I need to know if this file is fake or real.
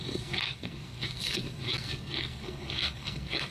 fake